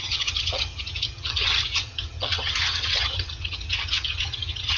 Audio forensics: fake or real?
fake